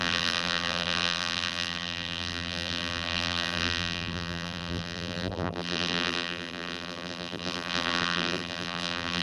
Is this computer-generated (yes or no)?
yes